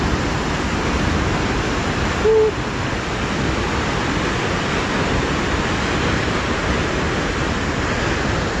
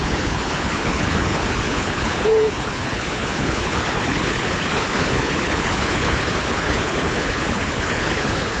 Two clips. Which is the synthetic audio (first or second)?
second